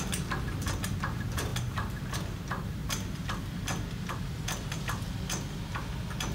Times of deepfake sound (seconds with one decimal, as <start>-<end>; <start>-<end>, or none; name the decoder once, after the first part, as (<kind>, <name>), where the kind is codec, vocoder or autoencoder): 1.5-2.0 (vocoder, BigVGAN v2)